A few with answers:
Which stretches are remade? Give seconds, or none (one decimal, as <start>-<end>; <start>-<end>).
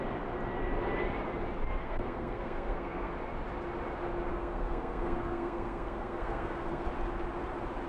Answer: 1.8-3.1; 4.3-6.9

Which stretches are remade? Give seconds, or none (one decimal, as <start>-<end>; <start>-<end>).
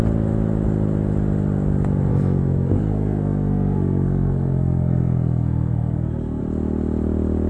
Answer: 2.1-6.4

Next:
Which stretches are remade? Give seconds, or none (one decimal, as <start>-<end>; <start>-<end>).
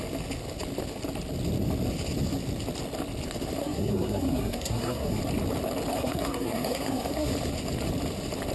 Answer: 3.6-5.2; 5.9-7.3